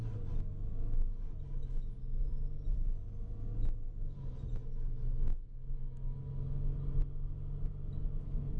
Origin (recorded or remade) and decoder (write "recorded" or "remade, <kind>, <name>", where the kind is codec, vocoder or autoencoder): recorded